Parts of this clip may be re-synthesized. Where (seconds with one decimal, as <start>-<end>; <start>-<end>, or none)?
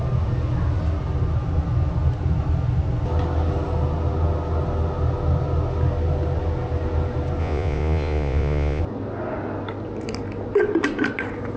7.4-8.8